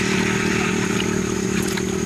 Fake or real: real